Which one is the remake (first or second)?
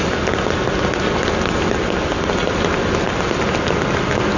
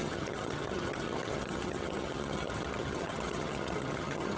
second